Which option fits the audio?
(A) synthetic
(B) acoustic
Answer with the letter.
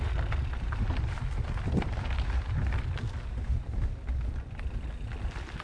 B